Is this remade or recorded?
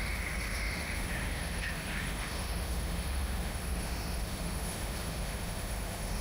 remade